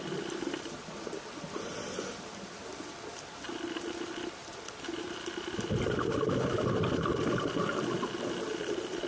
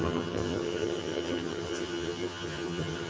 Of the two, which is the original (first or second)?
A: first